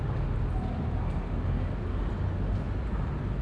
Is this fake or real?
real